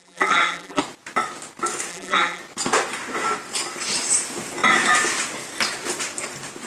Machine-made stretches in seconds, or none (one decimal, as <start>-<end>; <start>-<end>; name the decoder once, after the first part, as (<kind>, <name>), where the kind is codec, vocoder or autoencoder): 0.0-0.8 (vocoder, BigVGAN v2); 1.9-2.4